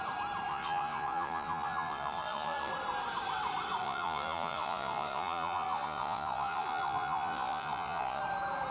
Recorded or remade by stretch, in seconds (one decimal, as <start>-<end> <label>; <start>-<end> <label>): 0.0-0.5 recorded; 0.5-2.7 remade; 2.7-3.8 recorded; 3.8-8.2 remade; 8.2-8.7 recorded